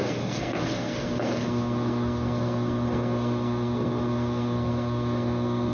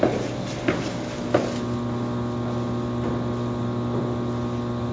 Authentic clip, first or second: second